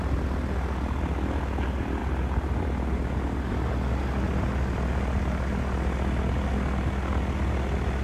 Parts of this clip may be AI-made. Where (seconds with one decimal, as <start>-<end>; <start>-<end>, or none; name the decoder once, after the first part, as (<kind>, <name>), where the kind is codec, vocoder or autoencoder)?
none